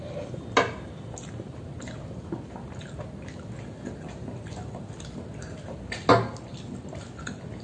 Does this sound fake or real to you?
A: real